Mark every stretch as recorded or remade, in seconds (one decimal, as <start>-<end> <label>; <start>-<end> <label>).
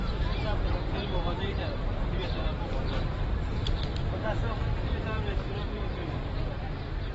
0.0-7.1 remade